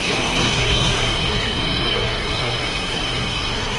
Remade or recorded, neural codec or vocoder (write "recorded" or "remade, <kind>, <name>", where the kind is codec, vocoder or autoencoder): remade, codec, SNAC